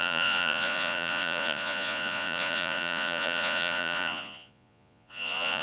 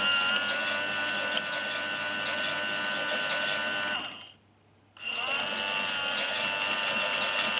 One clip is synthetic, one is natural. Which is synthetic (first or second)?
first